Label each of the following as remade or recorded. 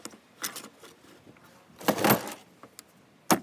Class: recorded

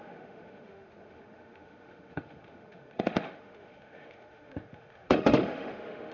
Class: remade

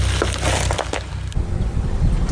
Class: recorded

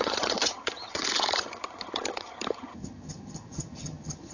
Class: remade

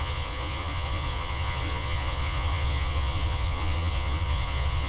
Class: remade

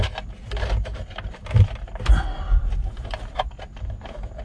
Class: recorded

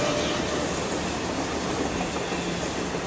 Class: recorded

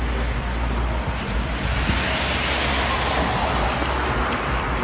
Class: recorded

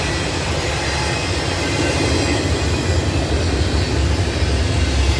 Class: recorded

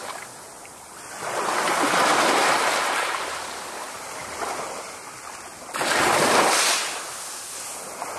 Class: recorded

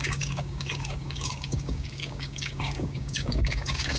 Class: remade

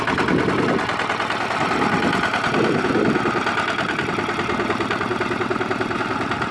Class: recorded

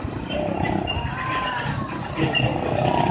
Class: recorded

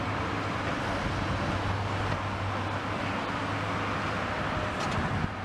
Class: recorded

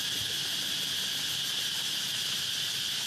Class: recorded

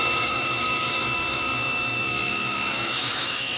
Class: remade